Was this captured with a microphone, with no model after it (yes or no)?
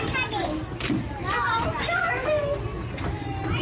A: yes